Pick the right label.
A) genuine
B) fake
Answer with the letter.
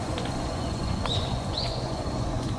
B